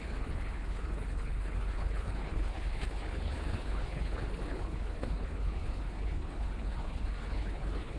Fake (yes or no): yes